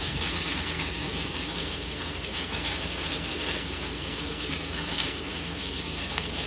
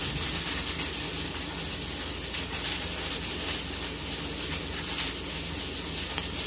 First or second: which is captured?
second